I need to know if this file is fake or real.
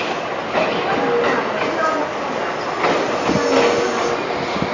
real